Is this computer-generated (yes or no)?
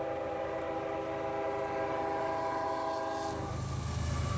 no